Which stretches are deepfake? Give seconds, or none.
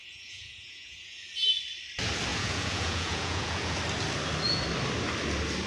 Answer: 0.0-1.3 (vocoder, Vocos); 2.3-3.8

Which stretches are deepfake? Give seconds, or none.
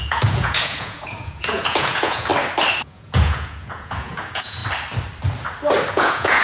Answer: 0.0-2.3 (vocoder, Vocos); 2.8-4.6; 5.9-6.4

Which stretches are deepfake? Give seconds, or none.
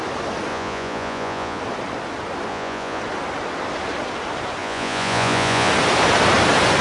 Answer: 0.5-1.6 (vocoder, Vocos); 2.5-3.0; 4.6-5.7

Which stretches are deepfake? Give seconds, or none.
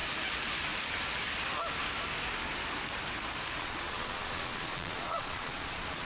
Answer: 3.6-6.0 (vocoder, Vocos)